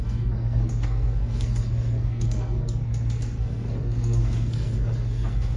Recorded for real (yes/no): no